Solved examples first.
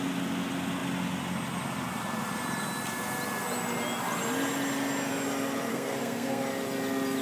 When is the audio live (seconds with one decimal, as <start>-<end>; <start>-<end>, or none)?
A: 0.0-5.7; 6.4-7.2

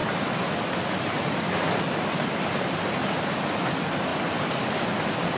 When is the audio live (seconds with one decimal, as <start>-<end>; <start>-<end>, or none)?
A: 0.0-5.4

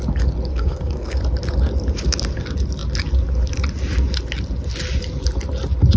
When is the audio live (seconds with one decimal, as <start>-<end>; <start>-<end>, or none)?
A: 0.0-0.5; 1.2-6.0